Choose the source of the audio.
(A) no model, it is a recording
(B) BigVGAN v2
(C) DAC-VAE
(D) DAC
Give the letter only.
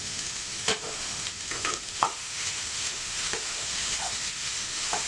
C